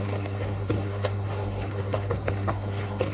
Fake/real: fake